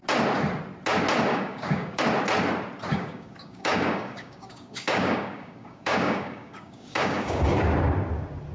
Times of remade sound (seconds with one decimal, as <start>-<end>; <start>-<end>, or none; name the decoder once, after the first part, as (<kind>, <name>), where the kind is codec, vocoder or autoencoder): 1.3-2.0 (codec, DAC); 2.9-7.4